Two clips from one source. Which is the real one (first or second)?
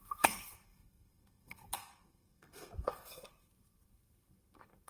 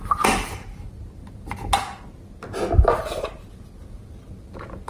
second